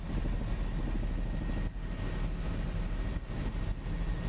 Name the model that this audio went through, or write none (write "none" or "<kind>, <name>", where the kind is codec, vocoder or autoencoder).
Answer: none